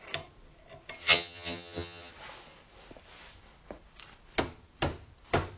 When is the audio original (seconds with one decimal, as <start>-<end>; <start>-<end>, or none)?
0.0-1.0; 2.1-5.6